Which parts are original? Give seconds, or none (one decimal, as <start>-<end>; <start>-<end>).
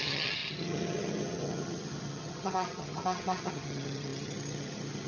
none